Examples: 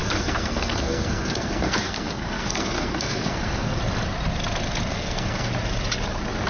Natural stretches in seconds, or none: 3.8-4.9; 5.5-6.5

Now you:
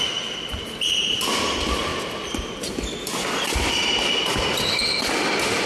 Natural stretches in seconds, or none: 0.0-5.7